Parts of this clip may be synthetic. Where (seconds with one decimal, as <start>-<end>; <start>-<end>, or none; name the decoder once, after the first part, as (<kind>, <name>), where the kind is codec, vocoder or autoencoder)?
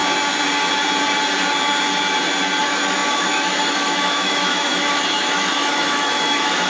2.6-6.7 (autoencoder, DAC-VAE)